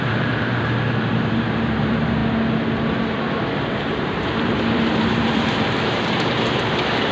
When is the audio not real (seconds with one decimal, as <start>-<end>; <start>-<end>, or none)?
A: 0.0-2.2; 3.7-7.1